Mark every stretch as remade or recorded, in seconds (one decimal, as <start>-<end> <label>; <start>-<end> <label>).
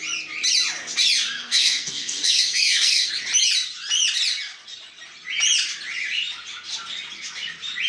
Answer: 0.0-1.4 recorded; 1.4-3.1 remade; 3.1-7.9 recorded